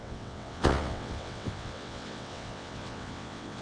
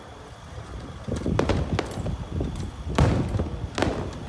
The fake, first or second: first